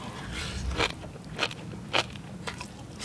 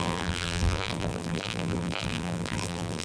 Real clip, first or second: first